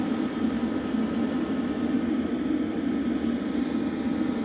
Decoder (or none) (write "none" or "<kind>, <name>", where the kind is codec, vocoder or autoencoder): none